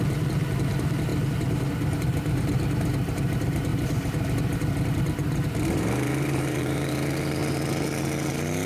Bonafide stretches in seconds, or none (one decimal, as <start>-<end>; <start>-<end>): 3.7-4.9; 7.4-8.7